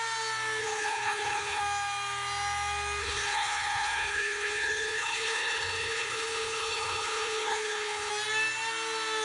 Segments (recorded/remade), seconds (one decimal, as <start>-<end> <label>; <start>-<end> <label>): 0.0-0.6 recorded; 0.6-1.6 remade; 1.6-3.0 recorded; 3.0-8.1 remade; 8.1-9.2 recorded